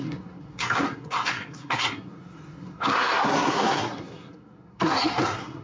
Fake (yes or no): yes